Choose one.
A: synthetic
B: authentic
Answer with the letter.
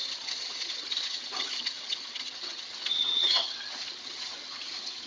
A